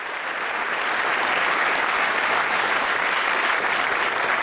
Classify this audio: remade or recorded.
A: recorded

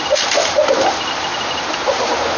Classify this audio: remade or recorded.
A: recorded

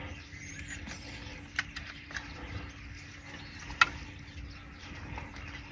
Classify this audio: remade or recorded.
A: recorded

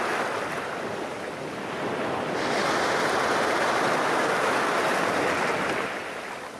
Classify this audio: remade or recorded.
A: recorded